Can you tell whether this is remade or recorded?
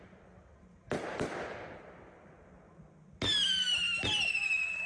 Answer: recorded